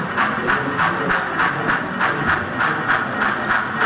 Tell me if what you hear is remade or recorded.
recorded